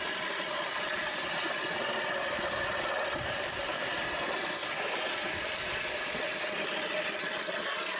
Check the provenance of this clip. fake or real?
real